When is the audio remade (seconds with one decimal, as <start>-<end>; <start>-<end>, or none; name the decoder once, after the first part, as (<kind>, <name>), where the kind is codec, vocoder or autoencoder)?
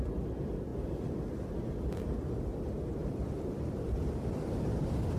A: 3.0-5.2 (vocoder, BigVGAN v2)